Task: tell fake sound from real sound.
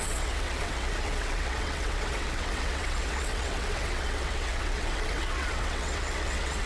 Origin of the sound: fake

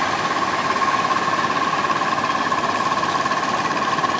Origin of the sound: real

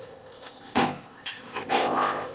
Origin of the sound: fake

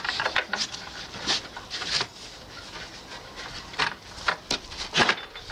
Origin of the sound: real